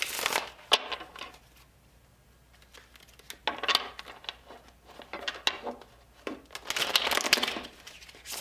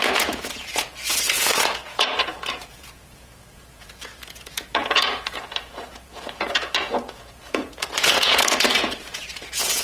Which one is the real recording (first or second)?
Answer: first